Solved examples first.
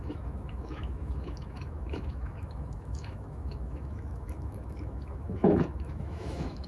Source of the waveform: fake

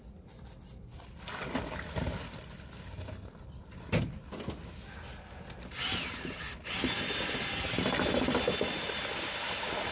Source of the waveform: real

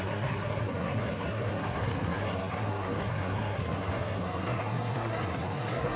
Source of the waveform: fake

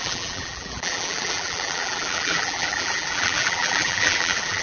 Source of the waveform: fake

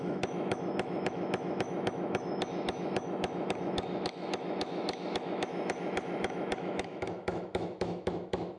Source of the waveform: fake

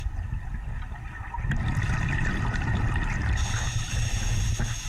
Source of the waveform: real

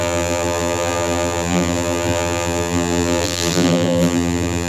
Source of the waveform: fake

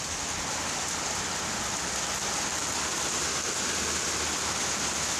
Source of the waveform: real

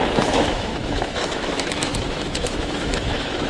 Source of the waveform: fake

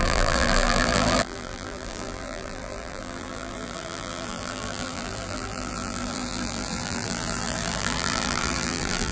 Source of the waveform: fake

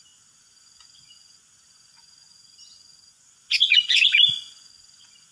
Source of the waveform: fake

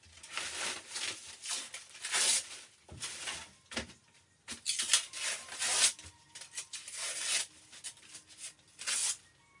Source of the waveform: real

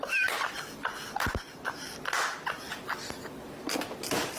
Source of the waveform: real